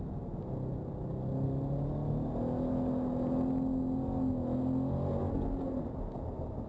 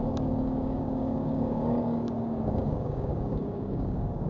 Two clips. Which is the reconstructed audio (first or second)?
second